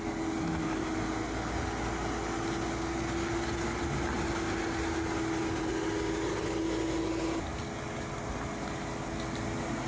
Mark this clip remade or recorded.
recorded